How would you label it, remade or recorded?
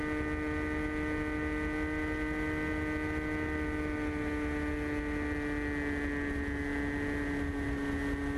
recorded